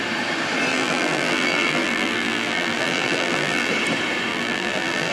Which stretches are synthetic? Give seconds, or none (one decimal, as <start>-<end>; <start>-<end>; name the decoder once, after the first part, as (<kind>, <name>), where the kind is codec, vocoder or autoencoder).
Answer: 0.7-3.7 (vocoder, BigVGAN v2); 4.3-5.1